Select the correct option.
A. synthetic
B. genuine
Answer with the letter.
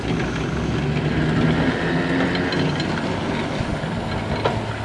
B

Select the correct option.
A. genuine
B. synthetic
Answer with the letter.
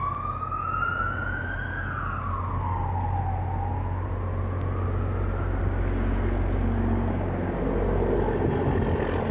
A